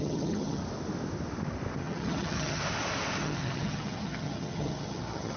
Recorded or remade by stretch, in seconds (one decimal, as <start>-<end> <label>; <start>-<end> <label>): 0.0-0.6 remade; 0.6-1.8 recorded; 1.8-2.6 remade; 2.6-3.2 recorded; 3.2-5.4 remade